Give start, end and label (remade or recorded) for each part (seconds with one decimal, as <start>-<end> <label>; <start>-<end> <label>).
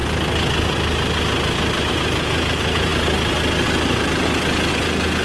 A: 0.0-1.9 recorded; 1.9-2.9 remade; 2.9-4.7 recorded; 4.7-5.2 remade